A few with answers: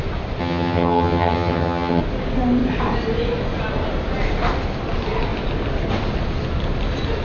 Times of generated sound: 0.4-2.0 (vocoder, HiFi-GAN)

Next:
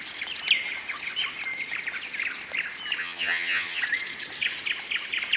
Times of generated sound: 3.0-3.8 (vocoder, HiFi-GAN)